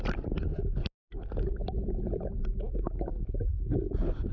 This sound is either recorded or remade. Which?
recorded